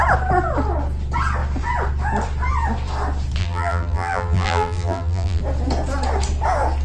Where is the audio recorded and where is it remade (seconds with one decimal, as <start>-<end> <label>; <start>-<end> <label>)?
0.0-3.4 recorded; 3.4-5.4 remade; 5.4-6.8 recorded